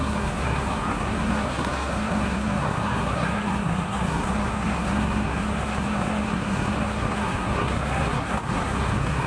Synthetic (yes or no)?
yes